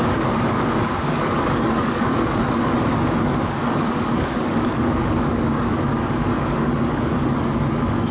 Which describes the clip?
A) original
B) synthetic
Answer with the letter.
B